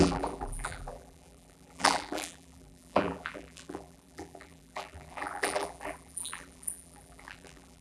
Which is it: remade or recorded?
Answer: remade